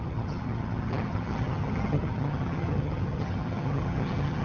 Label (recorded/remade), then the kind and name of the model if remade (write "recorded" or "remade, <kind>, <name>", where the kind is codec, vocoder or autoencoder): remade, vocoder, HiFi-GAN